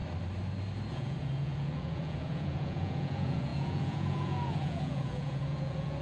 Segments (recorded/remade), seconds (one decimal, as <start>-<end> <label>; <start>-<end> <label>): 0.0-0.9 recorded; 0.9-6.0 remade